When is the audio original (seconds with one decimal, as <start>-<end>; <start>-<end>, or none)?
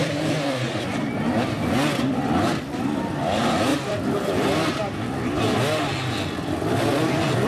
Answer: 2.5-3.7; 5.4-7.5